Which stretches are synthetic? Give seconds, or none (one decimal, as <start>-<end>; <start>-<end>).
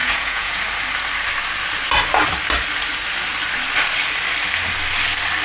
0.0-0.6